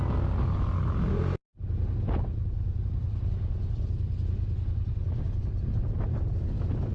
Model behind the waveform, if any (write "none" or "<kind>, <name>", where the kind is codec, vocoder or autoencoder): none